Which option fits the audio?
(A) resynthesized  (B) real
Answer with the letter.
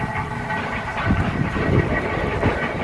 B